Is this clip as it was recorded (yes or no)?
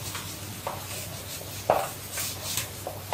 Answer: yes